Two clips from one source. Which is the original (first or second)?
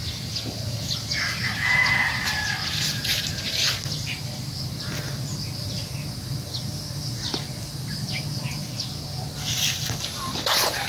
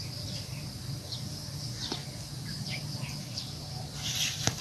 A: first